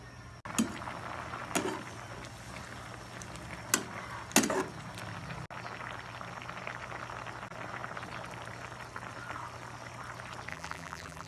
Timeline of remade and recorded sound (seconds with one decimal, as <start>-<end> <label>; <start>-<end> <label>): 0.0-10.5 recorded; 10.5-11.3 remade

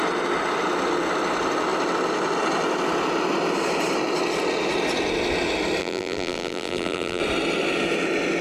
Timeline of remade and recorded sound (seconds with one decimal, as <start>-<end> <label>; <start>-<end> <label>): 0.0-5.8 recorded; 5.8-7.2 remade; 7.2-8.4 recorded

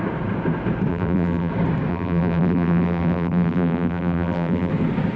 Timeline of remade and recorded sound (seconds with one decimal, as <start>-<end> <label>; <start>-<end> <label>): 0.0-0.9 recorded; 0.9-1.5 remade; 1.5-1.9 recorded; 1.9-4.7 remade; 4.7-5.2 recorded

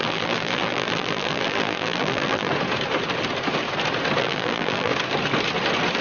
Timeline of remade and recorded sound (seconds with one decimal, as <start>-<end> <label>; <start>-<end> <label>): 0.0-2.5 remade; 2.5-4.2 recorded; 4.2-4.9 remade; 4.9-6.0 recorded

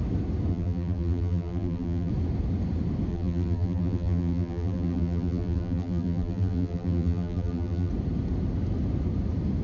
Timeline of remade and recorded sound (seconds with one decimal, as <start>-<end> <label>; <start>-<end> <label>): 0.0-0.5 recorded; 0.5-2.1 remade; 2.1-3.1 recorded; 3.1-7.9 remade; 7.9-9.6 recorded